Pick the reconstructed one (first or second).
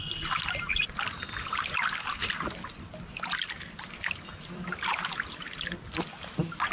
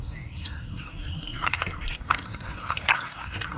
second